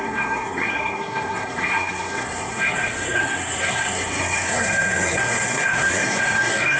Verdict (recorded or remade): remade